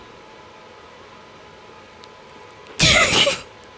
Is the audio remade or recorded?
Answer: recorded